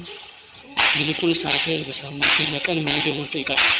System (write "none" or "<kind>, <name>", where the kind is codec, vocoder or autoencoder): vocoder, HiFi-GAN